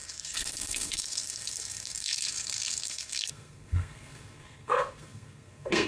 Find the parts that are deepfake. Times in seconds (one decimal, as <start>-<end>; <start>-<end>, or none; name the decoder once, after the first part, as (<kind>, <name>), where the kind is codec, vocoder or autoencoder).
0.0-5.9 (codec, SNAC)

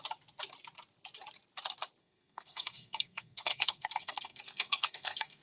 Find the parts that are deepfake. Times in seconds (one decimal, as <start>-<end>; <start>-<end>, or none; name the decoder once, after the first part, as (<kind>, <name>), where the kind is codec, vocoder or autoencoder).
2.0-5.4 (codec, SNAC)

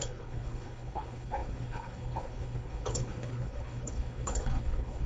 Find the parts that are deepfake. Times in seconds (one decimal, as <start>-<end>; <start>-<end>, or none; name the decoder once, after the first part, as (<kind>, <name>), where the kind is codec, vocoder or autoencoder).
0.0-5.1 (codec, HILCodec)

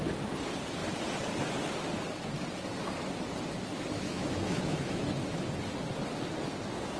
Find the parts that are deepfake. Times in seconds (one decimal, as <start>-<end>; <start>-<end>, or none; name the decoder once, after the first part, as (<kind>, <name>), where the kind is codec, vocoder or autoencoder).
4.1-5.4 (autoencoder, DAC-VAE)